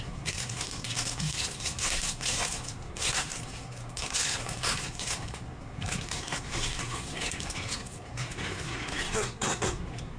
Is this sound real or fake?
fake